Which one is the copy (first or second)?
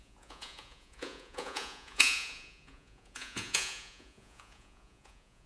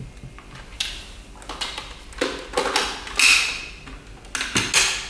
first